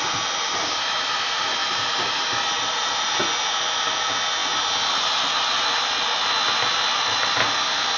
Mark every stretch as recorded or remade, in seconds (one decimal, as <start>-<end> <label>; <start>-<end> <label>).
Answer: 0.0-1.6 recorded; 1.6-3.2 remade; 3.2-8.0 recorded